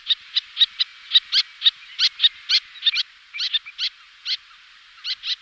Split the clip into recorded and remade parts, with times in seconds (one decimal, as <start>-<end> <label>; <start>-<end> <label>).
0.0-5.4 recorded